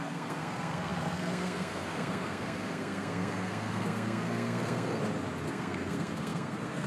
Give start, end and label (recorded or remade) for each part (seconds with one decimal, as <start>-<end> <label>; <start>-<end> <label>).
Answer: 0.0-5.0 remade; 5.0-5.5 recorded; 5.5-6.9 remade